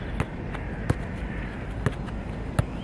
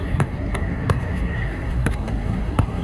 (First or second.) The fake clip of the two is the second